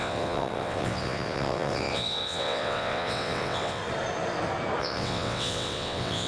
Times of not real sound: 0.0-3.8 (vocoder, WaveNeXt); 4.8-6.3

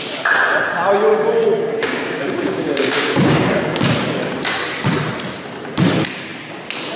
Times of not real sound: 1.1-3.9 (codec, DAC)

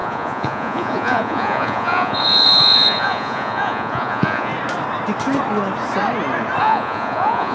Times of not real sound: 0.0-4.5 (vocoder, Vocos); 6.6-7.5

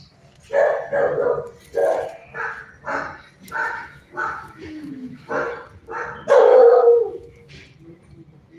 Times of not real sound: 3.6-5.3 (autoencoder, DAC-VAE); 6.5-7.5

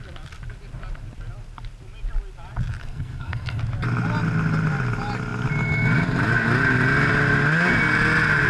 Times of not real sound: 2.8-3.6 (codec, SNAC)

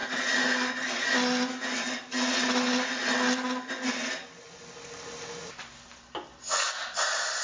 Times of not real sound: none

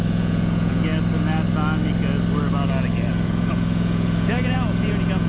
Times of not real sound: 0.0-0.9 (vocoder, Vocos); 3.1-5.3

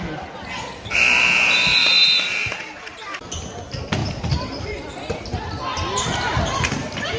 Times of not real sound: 1.8-3.4 (vocoder, BigVGAN v2); 4.0-4.8